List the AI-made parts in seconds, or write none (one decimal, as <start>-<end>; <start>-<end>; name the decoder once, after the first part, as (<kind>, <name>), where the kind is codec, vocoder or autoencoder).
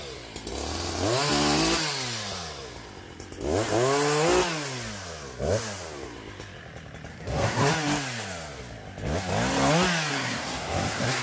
7.1-7.7 (codec, SNAC); 10.1-11.2